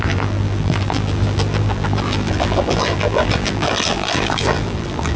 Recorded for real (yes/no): no